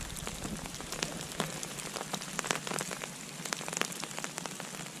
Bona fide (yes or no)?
no